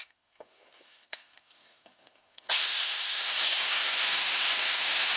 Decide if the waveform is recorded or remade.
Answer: remade